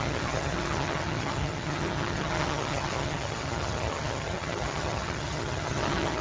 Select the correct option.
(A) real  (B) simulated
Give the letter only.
B